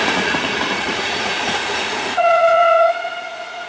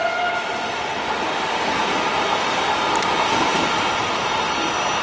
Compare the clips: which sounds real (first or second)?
second